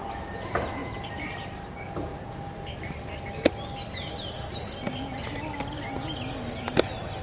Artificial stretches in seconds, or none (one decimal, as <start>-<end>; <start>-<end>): 0.8-1.6